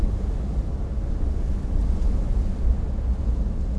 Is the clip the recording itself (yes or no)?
yes